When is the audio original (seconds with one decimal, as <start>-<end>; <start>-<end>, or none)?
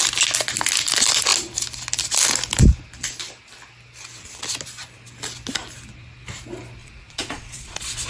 0.0-6.8